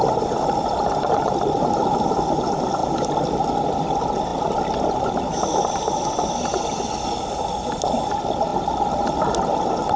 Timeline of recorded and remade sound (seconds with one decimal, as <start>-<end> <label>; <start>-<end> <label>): 0.0-10.0 recorded